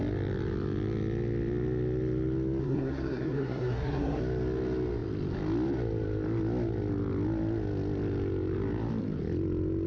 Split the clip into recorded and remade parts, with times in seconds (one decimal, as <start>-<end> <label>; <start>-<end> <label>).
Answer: 0.0-2.6 recorded; 2.6-4.2 remade; 4.2-9.9 recorded